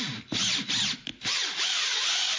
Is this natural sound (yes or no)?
yes